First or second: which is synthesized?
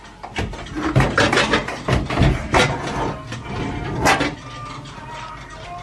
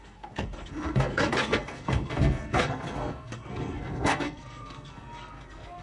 second